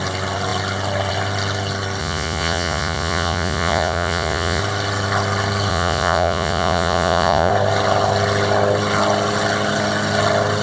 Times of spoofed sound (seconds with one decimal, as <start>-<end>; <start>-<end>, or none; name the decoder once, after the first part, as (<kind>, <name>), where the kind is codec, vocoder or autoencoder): 2.0-4.6 (vocoder, Vocos); 5.7-7.5

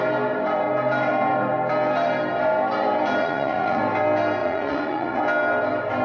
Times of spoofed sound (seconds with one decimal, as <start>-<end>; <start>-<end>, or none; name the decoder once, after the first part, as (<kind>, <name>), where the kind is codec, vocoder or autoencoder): 3.2-3.8 (vocoder, Vocos); 4.4-5.2

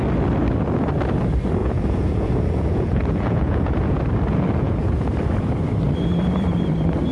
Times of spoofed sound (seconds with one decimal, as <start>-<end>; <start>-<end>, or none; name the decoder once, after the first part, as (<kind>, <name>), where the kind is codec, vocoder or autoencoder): 1.6-4.0 (vocoder, Vocos); 4.6-5.1

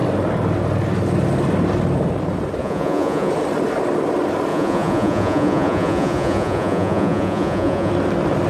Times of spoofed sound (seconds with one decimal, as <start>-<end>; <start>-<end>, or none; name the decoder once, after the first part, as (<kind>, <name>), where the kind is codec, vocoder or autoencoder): 2.6-3.3 (vocoder, Vocos); 4.5-7.9

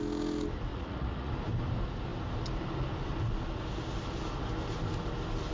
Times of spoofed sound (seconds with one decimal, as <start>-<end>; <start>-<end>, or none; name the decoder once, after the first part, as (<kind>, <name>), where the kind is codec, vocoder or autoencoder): 0.7-1.3 (vocoder, Vocos)

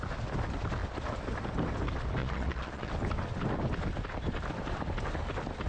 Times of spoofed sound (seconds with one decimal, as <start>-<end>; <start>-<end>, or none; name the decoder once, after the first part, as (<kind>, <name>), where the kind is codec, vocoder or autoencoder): 2.2-2.9 (vocoder, Vocos)

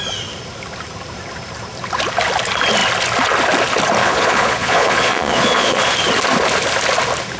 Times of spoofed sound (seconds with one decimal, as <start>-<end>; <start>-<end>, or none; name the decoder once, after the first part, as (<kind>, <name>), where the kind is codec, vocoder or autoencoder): 4.0-5.8 (vocoder, Vocos)

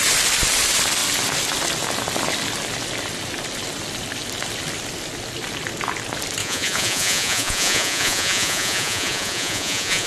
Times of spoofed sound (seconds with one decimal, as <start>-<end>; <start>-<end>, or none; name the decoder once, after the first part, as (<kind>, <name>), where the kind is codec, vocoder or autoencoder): 6.4-10.1 (vocoder, Vocos)